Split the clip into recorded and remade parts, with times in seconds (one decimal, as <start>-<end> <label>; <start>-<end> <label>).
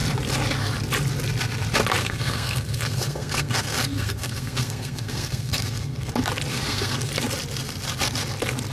0.0-2.0 recorded; 2.0-6.1 remade; 6.1-6.5 recorded; 6.5-7.1 remade; 7.1-8.7 recorded